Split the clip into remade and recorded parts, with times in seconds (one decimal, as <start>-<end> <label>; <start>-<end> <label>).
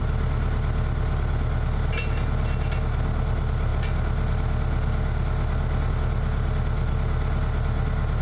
0.0-8.2 recorded